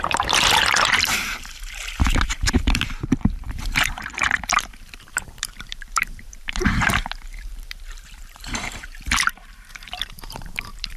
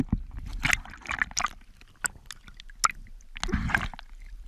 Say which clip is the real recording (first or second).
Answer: second